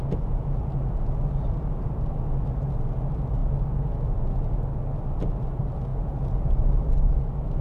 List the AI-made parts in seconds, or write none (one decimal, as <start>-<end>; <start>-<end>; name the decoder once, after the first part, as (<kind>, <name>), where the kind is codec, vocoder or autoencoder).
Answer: none